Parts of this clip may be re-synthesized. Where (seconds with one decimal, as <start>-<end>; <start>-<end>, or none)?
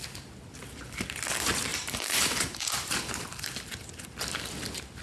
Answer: 1.7-2.7